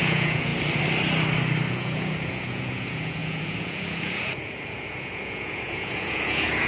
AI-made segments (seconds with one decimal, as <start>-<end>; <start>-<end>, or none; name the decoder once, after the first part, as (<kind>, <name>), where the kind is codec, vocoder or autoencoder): 0.0-0.5 (vocoder, Vocos); 1.7-6.7